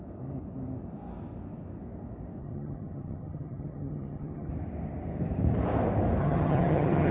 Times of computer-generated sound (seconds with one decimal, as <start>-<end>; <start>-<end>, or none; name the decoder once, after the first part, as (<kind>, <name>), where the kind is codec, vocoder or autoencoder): 2.4-4.5 (vocoder, HiFi-GAN); 6.2-7.1

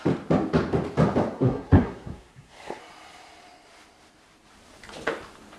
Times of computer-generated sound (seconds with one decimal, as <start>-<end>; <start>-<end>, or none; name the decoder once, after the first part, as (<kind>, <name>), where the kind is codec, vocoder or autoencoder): 1.3-2.8 (codec, SNAC)

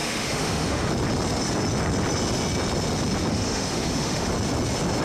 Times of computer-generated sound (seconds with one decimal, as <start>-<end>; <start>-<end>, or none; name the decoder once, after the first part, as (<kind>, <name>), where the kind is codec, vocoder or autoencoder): 0.0-0.9 (autoencoder, DAC-VAE); 3.3-4.3